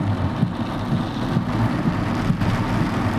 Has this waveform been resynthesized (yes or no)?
no